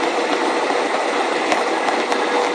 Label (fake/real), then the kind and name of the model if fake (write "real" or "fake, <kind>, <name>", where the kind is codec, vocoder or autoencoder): real